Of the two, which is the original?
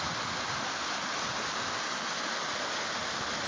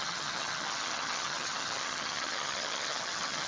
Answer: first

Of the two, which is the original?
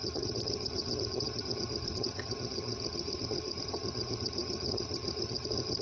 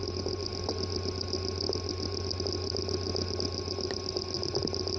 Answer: second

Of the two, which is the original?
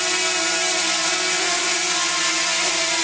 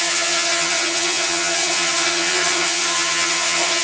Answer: first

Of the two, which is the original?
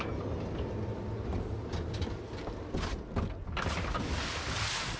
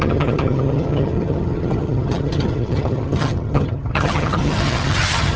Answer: first